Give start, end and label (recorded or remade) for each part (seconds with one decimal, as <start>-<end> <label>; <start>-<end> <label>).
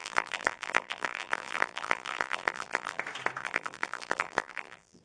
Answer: 0.0-3.0 remade; 3.0-3.4 recorded; 3.4-5.0 remade